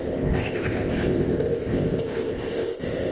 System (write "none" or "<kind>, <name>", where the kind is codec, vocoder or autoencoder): codec, ZipCodec